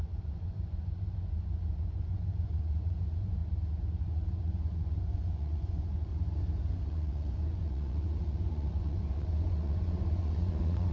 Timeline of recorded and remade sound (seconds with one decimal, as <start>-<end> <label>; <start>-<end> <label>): 0.0-3.4 remade; 3.4-4.0 recorded; 4.0-6.1 remade; 6.1-6.7 recorded; 6.7-10.9 remade